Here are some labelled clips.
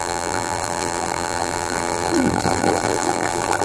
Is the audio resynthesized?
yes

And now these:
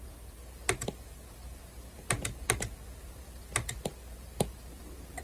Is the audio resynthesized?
no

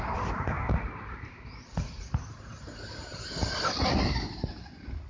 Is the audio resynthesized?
no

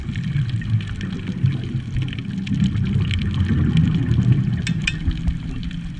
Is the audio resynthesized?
no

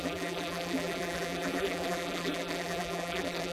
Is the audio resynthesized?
yes